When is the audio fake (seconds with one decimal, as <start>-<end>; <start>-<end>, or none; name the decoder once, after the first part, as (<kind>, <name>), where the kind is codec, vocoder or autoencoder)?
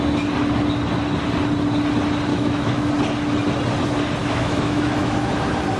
2.3-2.9 (autoencoder, DAC-VAE); 4.2-5.3